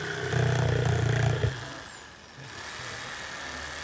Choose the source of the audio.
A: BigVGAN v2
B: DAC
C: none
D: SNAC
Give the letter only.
C